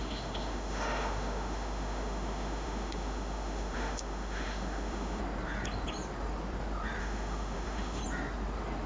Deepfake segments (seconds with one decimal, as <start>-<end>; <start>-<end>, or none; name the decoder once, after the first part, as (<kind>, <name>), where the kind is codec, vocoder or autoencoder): 0.0-5.2 (autoencoder, DAC-VAE); 7.0-8.0